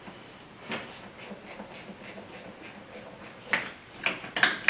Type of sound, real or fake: real